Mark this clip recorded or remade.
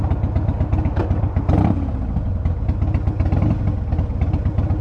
recorded